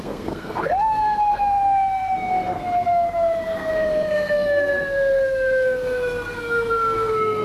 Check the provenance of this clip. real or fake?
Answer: fake